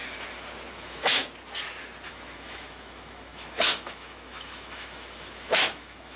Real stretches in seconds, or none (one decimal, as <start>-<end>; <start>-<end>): 0.0-0.7; 1.2-2.1